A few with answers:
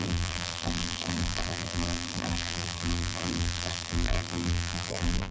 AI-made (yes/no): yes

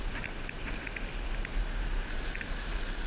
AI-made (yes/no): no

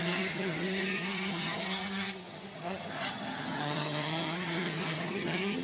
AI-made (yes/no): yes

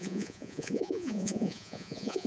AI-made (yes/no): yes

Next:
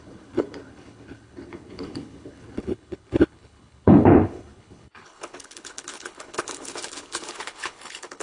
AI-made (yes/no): yes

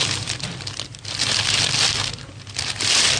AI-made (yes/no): no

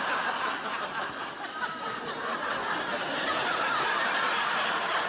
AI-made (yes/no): no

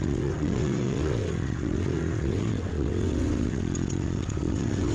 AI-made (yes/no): yes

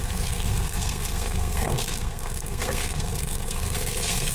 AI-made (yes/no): yes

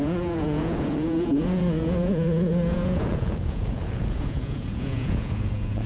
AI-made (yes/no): yes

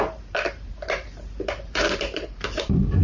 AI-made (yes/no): yes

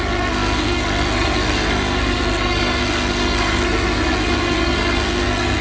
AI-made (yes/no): yes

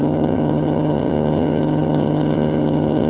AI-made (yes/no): yes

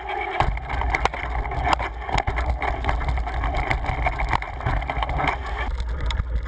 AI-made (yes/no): no